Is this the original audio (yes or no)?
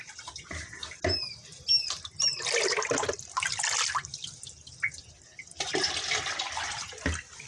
yes